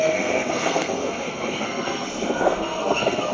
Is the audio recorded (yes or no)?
no